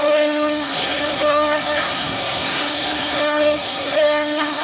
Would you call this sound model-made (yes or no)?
yes